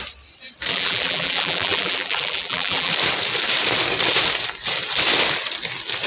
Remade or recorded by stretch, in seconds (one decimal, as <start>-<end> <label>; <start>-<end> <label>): 0.0-0.7 recorded; 0.7-2.9 remade; 2.9-6.1 recorded